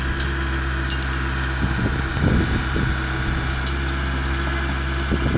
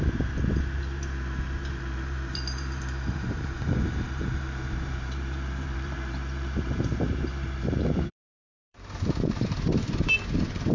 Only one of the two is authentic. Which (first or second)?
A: first